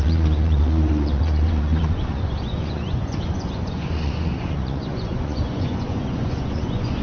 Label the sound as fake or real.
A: fake